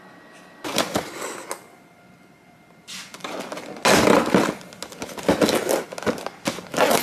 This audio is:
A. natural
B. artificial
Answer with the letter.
A